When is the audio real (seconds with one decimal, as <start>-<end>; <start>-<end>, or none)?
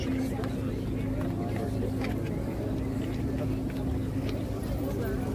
0.0-5.3